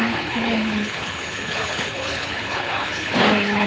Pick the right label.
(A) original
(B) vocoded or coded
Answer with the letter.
B